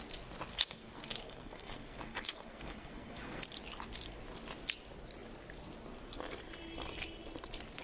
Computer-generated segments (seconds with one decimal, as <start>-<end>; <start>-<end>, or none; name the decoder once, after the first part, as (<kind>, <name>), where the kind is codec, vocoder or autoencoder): 0.5-3.4 (codec, SNAC)